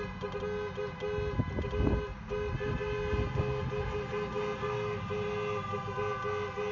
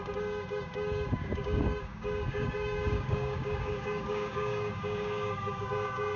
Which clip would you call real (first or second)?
first